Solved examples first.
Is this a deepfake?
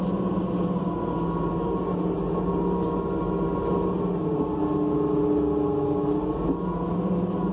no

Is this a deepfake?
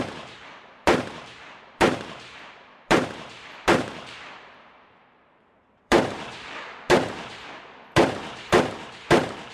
yes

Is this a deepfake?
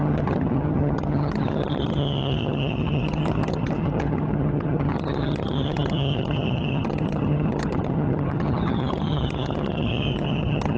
yes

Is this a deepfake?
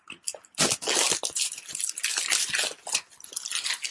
no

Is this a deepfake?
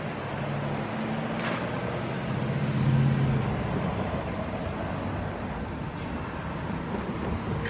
no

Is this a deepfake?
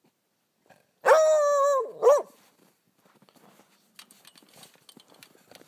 no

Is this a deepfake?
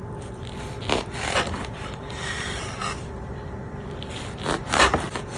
no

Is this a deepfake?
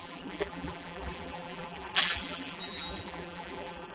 yes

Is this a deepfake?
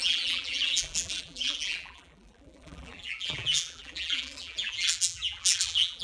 yes